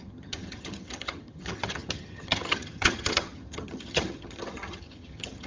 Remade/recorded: remade